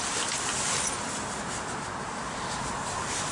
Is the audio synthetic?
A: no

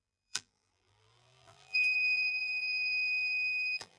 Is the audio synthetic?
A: yes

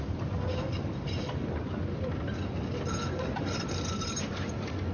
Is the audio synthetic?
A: no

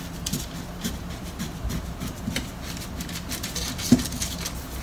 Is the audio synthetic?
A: no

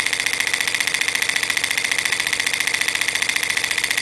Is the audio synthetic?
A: no